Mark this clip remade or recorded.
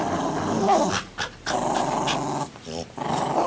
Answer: recorded